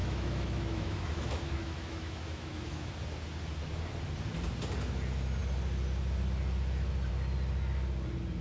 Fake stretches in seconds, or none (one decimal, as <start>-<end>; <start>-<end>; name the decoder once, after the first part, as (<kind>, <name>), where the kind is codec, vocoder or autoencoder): 0.0-2.9 (autoencoder, DAC-VAE)